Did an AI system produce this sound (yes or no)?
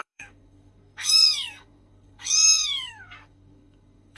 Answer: yes